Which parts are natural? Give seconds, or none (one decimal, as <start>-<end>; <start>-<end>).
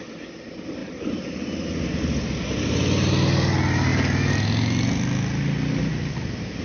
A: 0.0-6.6